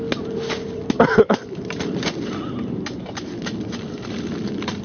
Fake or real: real